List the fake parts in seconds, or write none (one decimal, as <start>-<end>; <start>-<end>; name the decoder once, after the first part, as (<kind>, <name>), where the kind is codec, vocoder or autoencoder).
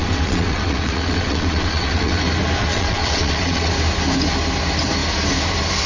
0.0-2.2 (vocoder, WaveNeXt); 2.6-3.7